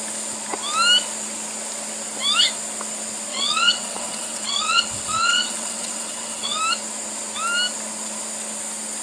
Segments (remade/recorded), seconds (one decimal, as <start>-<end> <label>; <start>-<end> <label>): 0.0-3.3 recorded; 3.3-6.6 remade; 6.6-9.0 recorded